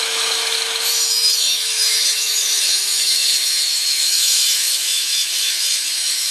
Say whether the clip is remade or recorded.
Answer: remade